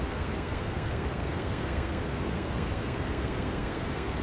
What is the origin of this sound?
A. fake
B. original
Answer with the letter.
A